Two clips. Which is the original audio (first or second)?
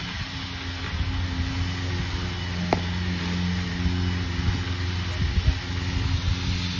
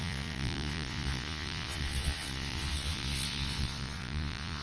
first